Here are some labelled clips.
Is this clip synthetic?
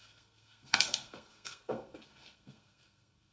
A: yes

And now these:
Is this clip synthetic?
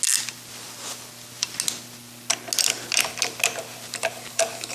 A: no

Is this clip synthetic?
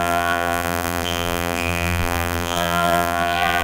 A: yes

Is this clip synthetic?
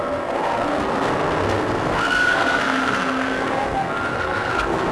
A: yes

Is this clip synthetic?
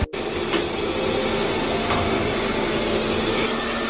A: no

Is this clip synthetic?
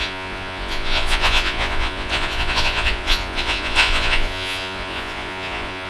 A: yes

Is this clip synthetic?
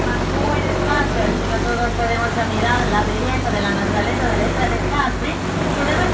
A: no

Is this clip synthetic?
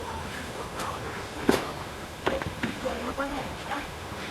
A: yes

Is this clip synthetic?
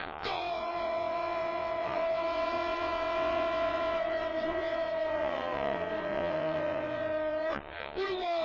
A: yes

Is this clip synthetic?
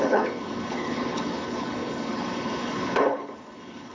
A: yes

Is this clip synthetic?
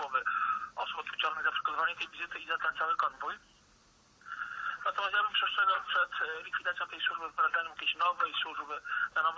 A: no